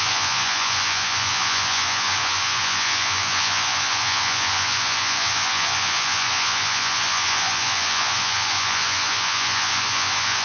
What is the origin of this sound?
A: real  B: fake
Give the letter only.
B